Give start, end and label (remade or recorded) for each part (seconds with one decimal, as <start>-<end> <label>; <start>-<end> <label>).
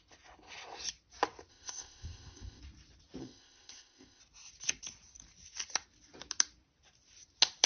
0.0-1.5 recorded; 1.5-2.6 remade; 2.6-3.2 recorded; 3.2-4.2 remade; 4.2-7.7 recorded